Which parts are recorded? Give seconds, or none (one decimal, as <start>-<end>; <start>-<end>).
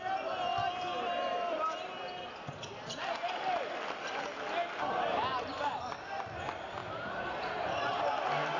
0.0-8.6